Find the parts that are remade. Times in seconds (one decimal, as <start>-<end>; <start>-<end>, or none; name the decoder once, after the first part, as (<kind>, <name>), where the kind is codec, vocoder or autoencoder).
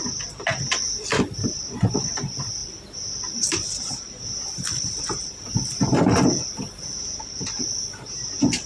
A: none